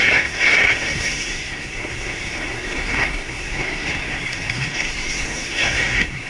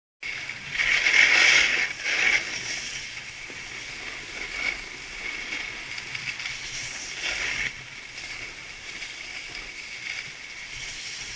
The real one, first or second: second